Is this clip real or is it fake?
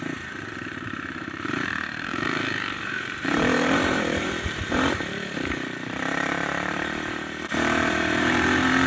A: fake